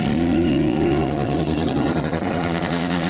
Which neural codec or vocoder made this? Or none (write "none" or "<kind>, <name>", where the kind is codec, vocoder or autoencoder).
vocoder, Vocos